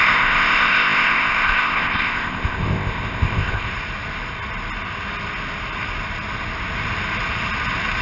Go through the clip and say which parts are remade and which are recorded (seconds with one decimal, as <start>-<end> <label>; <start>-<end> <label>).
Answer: 0.0-3.7 remade; 3.7-8.0 recorded